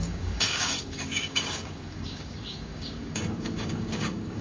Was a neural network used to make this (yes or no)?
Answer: yes